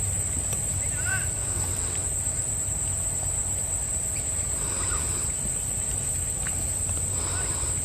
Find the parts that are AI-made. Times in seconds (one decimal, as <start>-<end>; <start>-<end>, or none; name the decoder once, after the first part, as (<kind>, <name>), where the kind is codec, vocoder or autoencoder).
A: 0.0-1.1 (vocoder, BigVGAN v2); 2.2-7.8